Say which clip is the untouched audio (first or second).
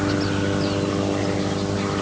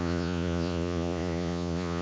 first